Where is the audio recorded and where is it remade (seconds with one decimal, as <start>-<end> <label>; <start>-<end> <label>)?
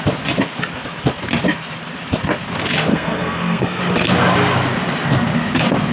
0.0-2.9 recorded; 2.9-3.8 remade; 3.8-5.9 recorded